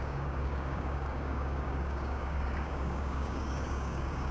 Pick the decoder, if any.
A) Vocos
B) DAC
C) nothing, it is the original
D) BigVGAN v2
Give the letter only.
B